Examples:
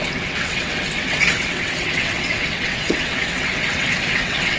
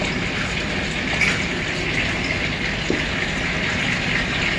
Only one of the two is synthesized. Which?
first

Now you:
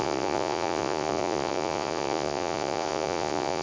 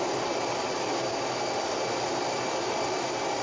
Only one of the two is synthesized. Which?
first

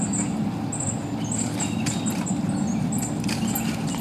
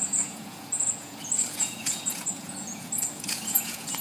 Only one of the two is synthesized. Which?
second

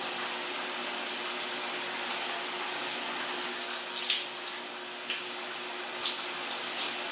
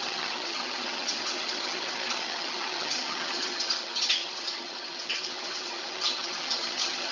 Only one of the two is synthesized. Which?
second